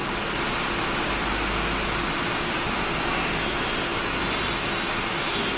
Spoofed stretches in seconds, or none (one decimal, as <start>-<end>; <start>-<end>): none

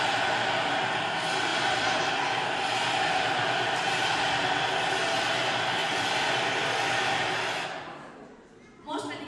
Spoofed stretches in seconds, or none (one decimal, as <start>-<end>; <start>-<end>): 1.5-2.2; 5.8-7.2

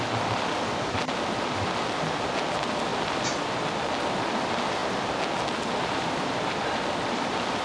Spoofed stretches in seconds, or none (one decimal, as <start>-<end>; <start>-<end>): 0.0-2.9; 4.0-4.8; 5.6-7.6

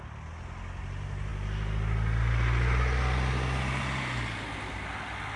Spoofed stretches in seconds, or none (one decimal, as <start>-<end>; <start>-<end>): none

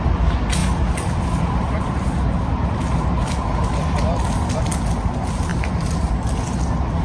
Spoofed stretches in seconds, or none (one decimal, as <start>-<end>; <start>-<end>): 5.5-6.1

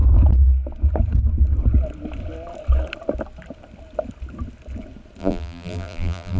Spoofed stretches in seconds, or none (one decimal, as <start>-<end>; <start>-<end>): 5.2-6.4